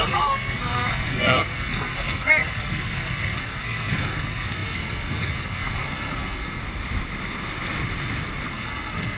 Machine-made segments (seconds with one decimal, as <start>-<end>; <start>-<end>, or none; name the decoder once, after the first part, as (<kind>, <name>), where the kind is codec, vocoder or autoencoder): 0.0-6.6 (codec, SNAC); 8.5-9.2